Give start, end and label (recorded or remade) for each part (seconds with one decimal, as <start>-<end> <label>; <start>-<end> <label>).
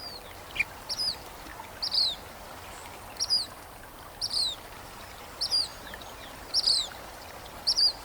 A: 0.0-1.5 remade; 1.5-2.3 recorded; 2.3-8.0 remade